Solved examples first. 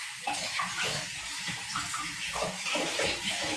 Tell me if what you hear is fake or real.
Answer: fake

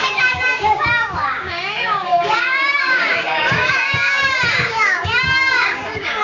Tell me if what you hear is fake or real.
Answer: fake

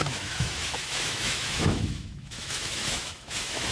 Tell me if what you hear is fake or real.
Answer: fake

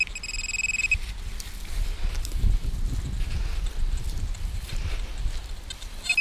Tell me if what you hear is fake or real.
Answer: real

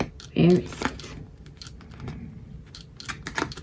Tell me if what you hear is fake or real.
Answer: real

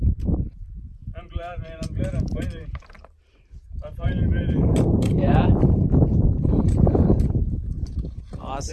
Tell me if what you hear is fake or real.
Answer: fake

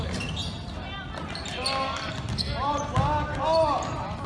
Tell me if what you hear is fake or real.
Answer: real